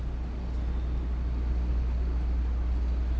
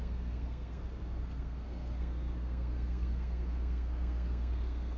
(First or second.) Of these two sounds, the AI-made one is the second